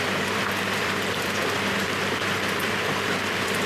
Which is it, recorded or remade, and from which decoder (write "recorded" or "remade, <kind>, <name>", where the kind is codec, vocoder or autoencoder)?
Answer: remade, vocoder, BigVGAN v2